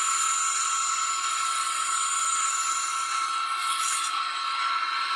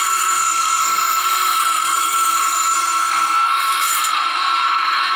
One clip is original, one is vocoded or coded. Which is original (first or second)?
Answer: first